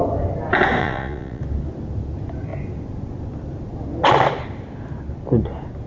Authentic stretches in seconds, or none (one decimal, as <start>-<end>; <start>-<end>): 0.0-0.8; 1.4-5.9